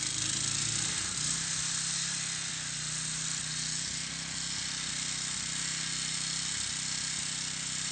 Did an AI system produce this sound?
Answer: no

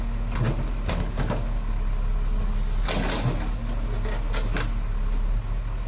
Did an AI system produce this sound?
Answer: no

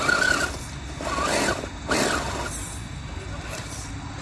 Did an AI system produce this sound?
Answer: no